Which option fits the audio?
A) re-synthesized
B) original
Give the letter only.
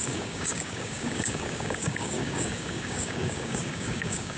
A